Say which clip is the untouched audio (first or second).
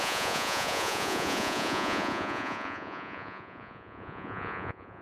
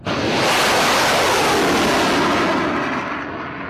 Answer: second